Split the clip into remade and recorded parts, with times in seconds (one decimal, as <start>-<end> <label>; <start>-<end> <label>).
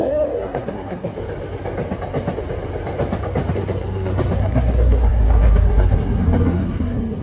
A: 0.0-1.1 remade; 1.1-3.5 recorded; 3.5-7.2 remade